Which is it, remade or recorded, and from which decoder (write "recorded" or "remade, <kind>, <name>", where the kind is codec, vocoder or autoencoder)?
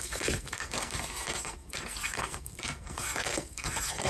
remade, codec, SNAC